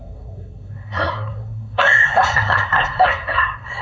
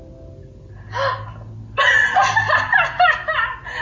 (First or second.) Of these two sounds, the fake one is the first